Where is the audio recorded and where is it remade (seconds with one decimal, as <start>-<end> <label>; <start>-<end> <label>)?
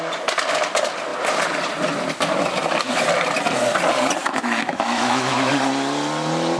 0.0-4.2 recorded; 4.2-5.5 remade; 5.5-6.6 recorded